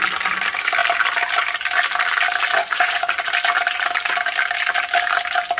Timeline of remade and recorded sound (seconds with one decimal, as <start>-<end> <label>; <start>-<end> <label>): 0.0-2.6 recorded; 2.6-3.3 remade; 3.3-5.6 recorded